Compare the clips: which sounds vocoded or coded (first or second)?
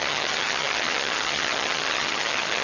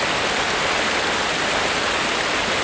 first